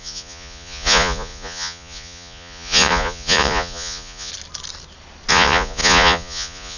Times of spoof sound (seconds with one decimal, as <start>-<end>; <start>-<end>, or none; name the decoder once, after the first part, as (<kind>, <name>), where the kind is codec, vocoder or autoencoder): 0.0-4.3 (vocoder, Vocos); 5.3-6.8